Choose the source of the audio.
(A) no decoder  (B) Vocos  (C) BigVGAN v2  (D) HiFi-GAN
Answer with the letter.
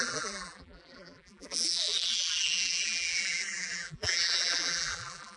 C